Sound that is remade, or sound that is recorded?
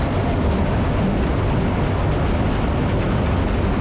recorded